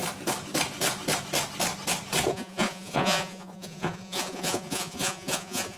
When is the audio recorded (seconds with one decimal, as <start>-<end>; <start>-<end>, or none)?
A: 0.0-2.3